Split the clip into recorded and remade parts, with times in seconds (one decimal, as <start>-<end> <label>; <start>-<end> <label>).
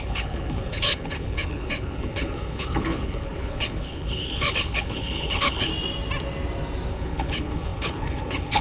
0.0-5.7 remade; 5.7-6.9 recorded; 6.9-8.6 remade